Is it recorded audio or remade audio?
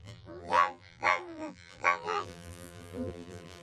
remade